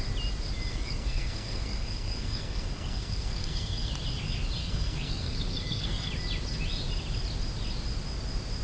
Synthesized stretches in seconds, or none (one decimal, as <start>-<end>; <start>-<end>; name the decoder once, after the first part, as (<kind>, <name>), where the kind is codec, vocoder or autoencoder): 0.7-3.9 (codec, SNAC); 4.6-6.1

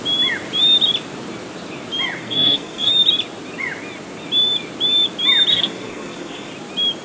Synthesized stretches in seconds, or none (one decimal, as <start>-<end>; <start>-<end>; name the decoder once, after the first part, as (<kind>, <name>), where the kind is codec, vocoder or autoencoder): 2.2-2.9 (codec, SNAC); 5.5-6.5

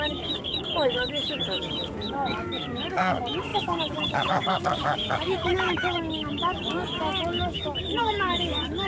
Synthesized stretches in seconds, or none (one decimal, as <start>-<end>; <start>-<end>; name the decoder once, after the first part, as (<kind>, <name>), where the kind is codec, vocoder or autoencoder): 0.0-8.9 (codec, DAC)

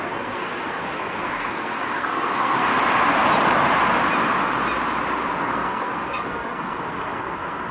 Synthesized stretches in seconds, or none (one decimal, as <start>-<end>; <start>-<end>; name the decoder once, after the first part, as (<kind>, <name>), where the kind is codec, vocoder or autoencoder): 0.0-2.7 (codec, SNAC); 5.4-7.7

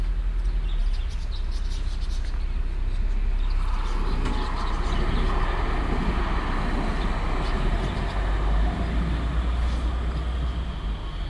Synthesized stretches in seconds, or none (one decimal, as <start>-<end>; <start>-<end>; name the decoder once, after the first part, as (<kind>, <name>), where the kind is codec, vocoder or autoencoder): none

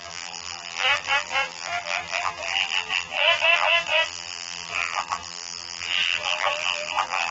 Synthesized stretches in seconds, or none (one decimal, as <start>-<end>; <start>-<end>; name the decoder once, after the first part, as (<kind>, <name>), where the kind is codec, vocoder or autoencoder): 0.0-7.3 (vocoder, BigVGAN v2)

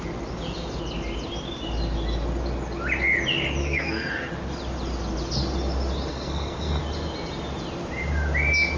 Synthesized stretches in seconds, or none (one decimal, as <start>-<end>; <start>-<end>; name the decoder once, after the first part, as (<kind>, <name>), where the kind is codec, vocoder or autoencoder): 3.6-4.3 (codec, SNAC); 6.1-6.8

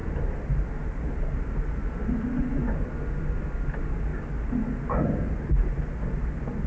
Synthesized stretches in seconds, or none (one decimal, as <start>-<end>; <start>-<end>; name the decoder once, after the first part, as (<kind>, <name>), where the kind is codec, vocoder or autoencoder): none